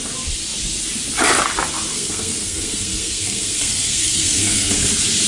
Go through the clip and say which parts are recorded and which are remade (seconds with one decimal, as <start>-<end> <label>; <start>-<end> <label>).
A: 0.0-1.9 recorded; 1.9-4.8 remade; 4.8-5.3 recorded